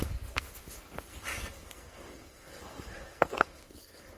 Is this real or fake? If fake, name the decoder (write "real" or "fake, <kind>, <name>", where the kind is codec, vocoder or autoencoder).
fake, codec, SNAC